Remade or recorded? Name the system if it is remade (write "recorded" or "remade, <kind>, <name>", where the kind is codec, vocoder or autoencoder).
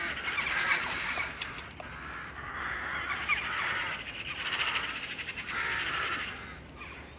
recorded